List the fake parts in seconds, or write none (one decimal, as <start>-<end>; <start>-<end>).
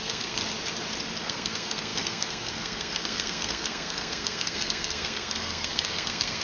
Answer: 0.0-0.4; 1.2-6.4